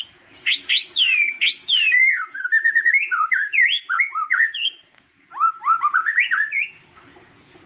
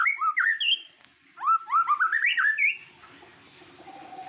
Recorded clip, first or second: second